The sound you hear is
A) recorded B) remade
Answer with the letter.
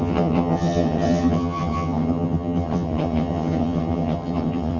B